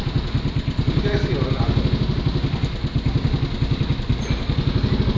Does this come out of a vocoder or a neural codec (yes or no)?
no